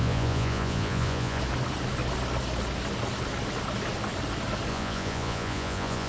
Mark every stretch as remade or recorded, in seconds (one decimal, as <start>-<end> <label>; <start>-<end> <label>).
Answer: 0.0-1.4 remade; 1.4-4.7 recorded; 4.7-6.1 remade